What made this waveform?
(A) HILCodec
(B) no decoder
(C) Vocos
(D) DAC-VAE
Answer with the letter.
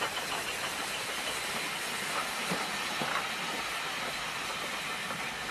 B